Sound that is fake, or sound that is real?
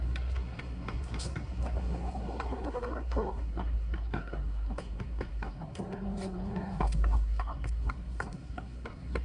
fake